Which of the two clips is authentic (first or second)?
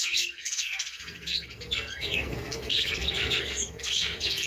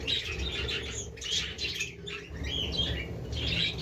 second